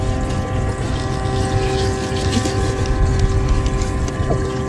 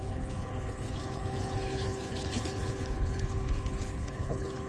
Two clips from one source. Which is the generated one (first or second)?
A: second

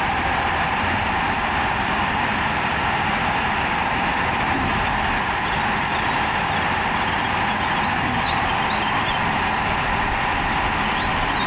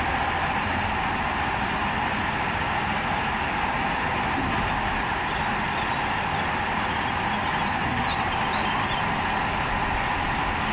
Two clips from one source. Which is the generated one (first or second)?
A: first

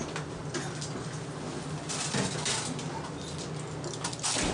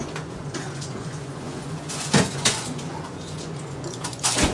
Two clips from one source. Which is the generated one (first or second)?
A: second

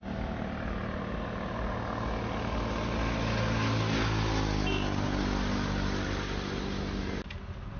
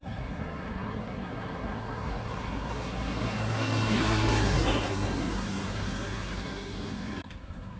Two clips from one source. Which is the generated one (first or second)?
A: second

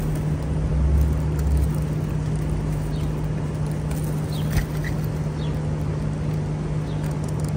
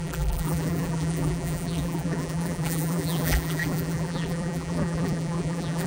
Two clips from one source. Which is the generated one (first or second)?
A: second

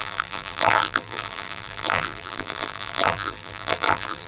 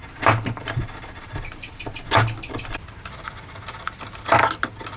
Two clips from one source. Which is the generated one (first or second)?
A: first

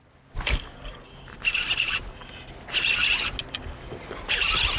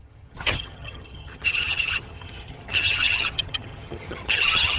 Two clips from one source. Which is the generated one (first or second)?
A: second